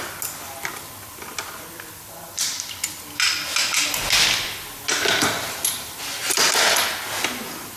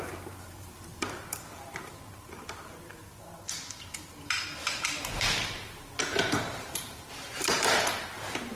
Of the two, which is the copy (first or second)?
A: second